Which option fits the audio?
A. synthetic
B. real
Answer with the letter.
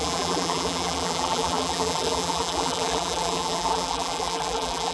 A